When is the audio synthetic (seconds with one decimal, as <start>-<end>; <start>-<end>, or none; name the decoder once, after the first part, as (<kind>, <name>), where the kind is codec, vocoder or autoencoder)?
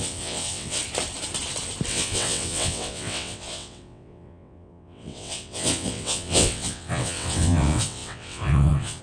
0.0-0.8 (vocoder, WaveNeXt); 1.9-9.0